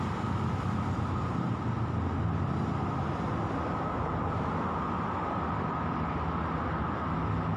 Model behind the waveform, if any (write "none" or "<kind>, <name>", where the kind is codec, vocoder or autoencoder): none